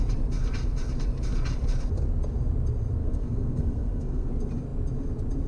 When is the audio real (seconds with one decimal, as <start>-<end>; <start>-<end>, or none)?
0.0-3.0; 4.3-5.5